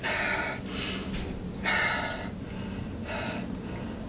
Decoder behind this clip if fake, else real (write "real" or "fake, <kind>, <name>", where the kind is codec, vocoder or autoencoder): real